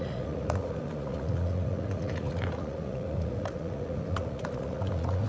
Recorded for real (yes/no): no